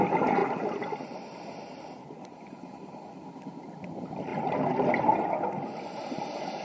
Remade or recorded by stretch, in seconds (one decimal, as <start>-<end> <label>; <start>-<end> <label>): 0.0-4.3 recorded; 4.3-5.0 remade; 5.0-6.6 recorded